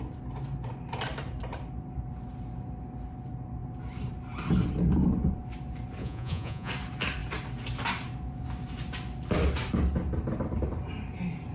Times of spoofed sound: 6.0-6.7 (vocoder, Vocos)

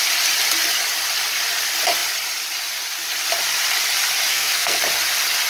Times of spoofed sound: 4.3-4.8 (codec, SNAC)